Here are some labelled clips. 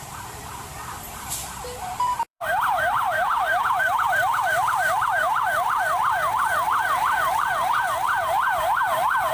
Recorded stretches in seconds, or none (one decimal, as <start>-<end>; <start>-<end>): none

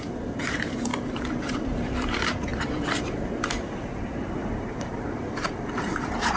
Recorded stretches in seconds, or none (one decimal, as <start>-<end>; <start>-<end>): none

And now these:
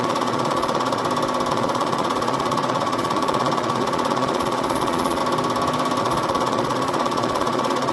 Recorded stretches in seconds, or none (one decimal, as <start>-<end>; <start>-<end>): 1.0-1.5; 5.2-6.0

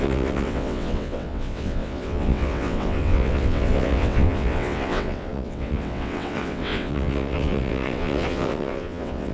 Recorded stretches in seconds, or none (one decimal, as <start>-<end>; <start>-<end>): none

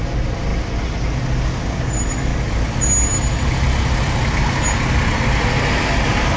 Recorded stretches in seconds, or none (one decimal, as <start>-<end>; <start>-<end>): 0.0-6.4

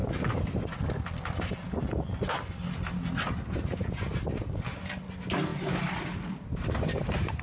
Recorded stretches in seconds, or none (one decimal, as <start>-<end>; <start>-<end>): 0.0-7.4

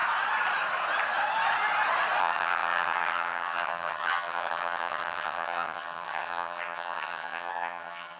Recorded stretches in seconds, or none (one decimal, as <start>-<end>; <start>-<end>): 0.0-2.2